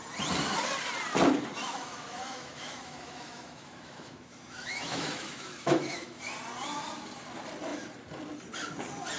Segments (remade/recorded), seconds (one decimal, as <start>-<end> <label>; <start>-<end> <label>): 0.0-1.6 recorded; 1.6-6.2 remade; 6.2-9.2 recorded